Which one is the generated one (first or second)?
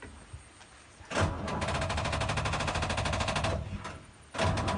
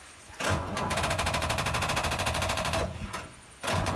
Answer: second